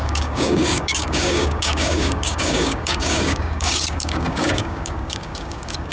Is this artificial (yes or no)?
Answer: yes